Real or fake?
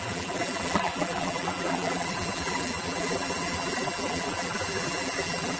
fake